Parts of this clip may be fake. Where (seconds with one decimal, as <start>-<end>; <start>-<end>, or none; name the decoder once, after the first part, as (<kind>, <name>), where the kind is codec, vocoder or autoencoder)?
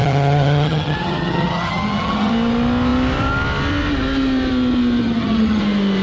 0.0-2.3 (vocoder, HiFi-GAN); 5.0-5.6